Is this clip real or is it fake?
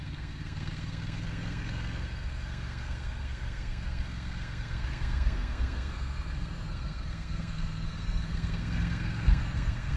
fake